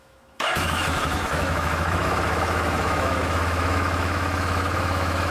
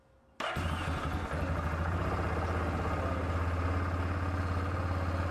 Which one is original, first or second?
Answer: second